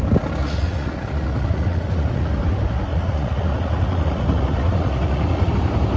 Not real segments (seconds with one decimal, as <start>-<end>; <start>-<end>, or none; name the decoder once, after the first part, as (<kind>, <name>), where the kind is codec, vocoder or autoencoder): 0.4-2.3 (vocoder, Vocos); 2.9-5.5